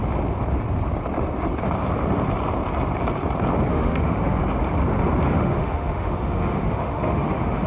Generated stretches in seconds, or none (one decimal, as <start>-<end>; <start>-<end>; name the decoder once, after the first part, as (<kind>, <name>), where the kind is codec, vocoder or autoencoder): 3.7-4.4 (autoencoder, DAC-VAE); 5.3-7.7